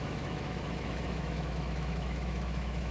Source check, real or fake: fake